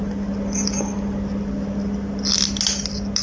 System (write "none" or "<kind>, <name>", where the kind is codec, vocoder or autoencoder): none